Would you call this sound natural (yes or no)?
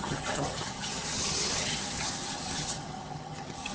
no